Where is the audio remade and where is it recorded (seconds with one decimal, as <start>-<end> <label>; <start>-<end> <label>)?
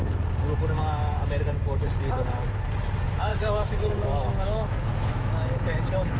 0.0-3.3 recorded; 3.3-5.3 remade; 5.3-6.2 recorded